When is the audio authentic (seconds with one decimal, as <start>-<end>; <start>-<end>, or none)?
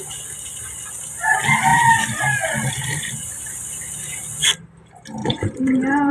0.0-5.2